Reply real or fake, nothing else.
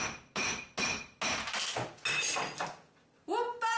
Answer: real